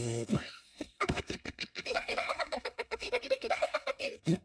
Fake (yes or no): yes